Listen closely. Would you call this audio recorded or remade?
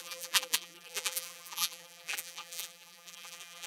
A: remade